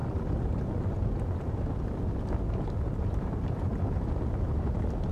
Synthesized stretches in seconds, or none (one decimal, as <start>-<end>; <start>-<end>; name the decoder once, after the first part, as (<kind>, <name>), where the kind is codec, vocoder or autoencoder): 3.1-3.7 (vocoder, BigVGAN v2)